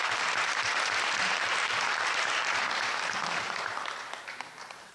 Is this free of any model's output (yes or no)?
no